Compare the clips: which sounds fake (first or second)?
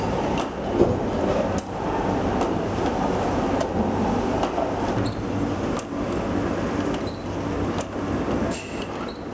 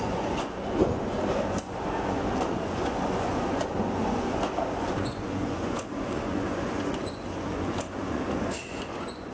second